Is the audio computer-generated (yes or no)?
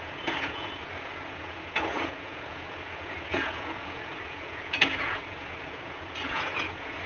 yes